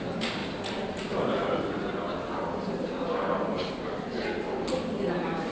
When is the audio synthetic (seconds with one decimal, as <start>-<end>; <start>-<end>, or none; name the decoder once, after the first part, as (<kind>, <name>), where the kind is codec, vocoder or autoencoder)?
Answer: none